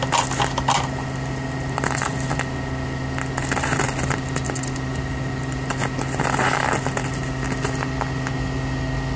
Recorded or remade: recorded